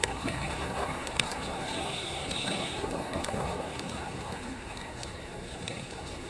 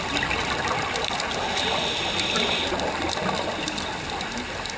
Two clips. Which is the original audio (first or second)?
second